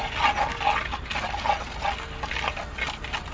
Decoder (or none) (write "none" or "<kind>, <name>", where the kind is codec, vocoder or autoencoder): none